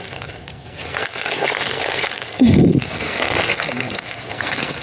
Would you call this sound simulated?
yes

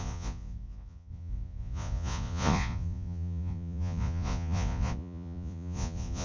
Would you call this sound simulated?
yes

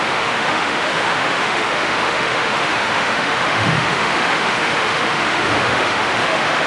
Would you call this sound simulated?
yes